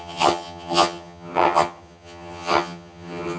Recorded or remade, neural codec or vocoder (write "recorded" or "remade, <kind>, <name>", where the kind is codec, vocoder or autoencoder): remade, vocoder, HiFi-GAN